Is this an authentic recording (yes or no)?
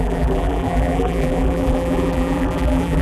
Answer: no